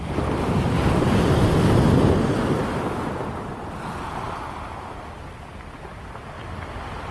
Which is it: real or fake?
real